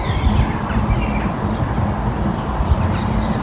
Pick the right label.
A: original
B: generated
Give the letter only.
A